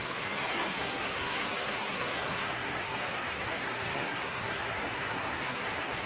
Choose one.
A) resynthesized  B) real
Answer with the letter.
A